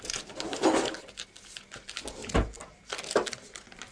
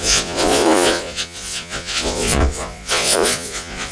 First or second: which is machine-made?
second